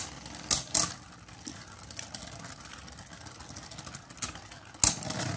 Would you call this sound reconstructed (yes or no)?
no